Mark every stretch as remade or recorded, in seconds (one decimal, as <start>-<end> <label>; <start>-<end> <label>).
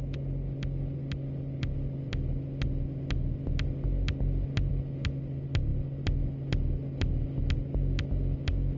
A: 0.0-8.8 recorded